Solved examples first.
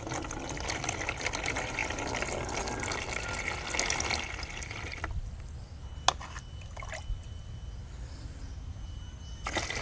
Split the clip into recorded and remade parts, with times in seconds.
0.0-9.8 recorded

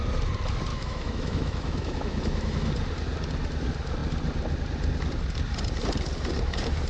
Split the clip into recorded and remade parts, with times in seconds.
0.0-0.7 recorded; 0.7-2.7 remade; 2.7-6.9 recorded

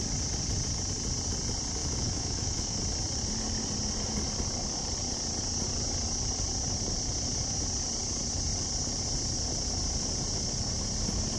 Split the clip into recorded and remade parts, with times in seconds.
0.0-1.8 recorded; 1.8-2.8 remade; 2.8-11.4 recorded

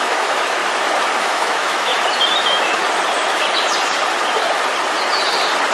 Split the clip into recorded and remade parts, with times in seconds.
0.0-0.6 remade; 0.6-1.2 recorded; 1.2-1.9 remade; 1.9-2.4 recorded; 2.4-2.8 remade; 2.8-5.7 recorded

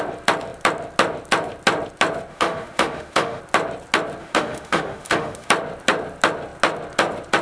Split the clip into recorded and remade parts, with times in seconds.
0.0-2.3 recorded; 2.3-3.4 remade; 3.4-4.2 recorded; 4.2-5.5 remade; 5.5-7.4 recorded

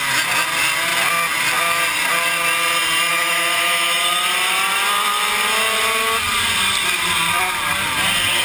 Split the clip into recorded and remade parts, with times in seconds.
0.0-3.1 recorded; 3.1-4.0 remade; 4.0-8.4 recorded